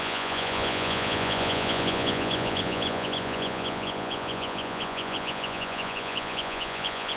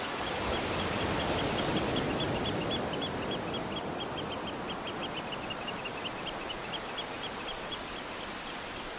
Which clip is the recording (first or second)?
second